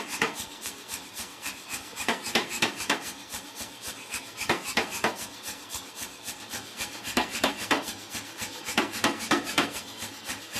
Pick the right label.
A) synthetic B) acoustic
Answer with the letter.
A